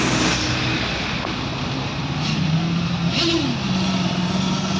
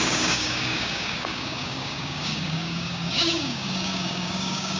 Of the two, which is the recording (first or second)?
first